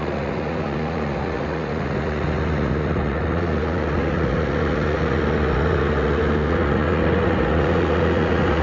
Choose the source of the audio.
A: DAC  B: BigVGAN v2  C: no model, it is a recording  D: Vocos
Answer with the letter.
D